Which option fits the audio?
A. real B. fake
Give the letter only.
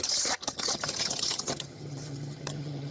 B